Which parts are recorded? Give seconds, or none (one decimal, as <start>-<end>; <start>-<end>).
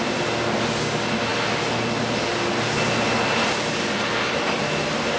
0.0-5.2